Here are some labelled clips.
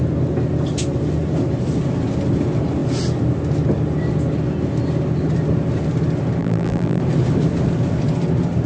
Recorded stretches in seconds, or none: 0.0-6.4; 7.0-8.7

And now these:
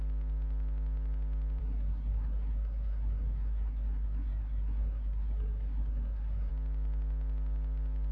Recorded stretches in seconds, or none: 0.0-1.6; 6.5-8.1